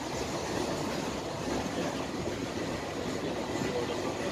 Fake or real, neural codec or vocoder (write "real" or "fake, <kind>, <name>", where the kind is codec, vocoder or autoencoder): real